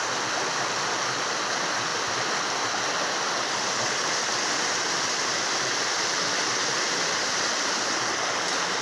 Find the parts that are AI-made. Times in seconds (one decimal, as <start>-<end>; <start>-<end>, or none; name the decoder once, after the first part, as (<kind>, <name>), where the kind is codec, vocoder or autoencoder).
none